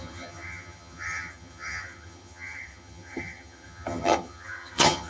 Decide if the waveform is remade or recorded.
remade